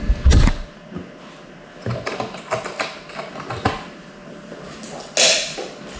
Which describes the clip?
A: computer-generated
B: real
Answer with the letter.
B